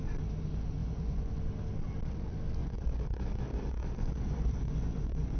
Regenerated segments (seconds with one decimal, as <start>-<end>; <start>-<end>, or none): 0.8-1.3; 2.6-5.4